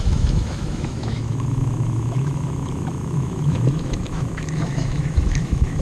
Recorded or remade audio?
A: remade